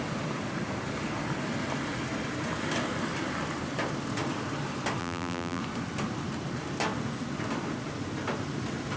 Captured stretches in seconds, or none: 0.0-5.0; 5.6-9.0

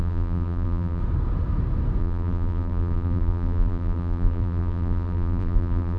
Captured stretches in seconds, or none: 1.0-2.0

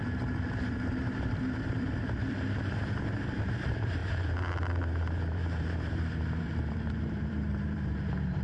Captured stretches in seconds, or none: none

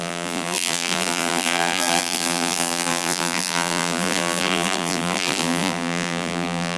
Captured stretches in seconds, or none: none

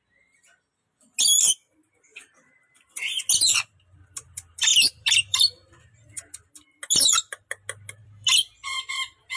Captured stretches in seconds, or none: 0.0-4.7; 6.2-8.0; 8.9-9.4